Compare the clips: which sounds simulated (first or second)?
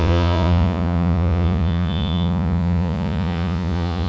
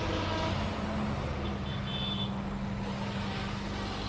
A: first